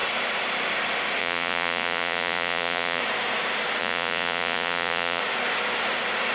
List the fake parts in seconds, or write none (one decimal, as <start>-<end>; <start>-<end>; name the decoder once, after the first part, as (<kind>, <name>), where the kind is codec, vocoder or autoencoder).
1.2-3.0 (vocoder, Vocos); 3.8-5.2